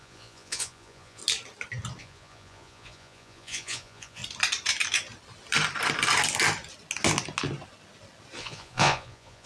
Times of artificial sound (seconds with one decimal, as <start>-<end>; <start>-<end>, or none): 0.0-1.2; 2.0-4.2; 8.4-9.5